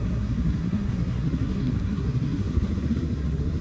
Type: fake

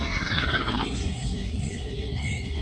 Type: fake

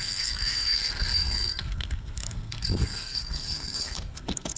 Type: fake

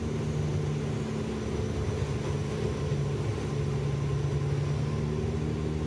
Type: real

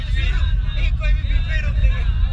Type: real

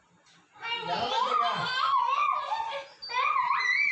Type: real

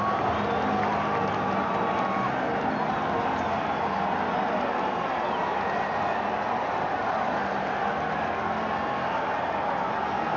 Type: real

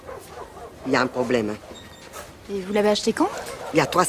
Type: real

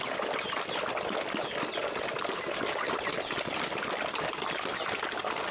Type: real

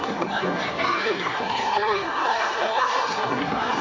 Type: fake